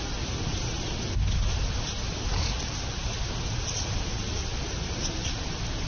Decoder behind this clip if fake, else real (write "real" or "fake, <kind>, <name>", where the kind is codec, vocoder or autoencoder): real